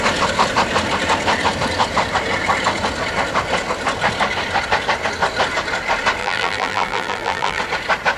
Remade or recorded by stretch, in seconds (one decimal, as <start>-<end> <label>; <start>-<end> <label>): 0.0-6.2 recorded; 6.2-7.6 remade; 7.6-8.2 recorded